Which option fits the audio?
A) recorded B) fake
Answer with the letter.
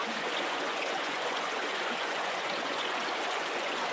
B